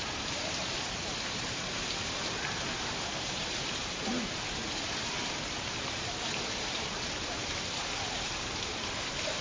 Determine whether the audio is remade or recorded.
remade